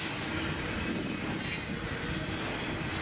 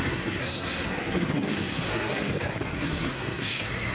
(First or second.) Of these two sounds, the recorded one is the first